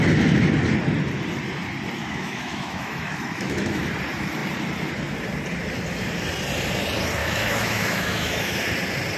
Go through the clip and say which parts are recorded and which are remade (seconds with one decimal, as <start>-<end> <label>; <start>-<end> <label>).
0.0-2.0 recorded; 2.0-3.8 remade; 3.8-7.2 recorded; 7.2-8.6 remade; 8.6-9.2 recorded